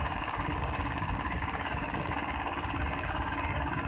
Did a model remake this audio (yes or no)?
yes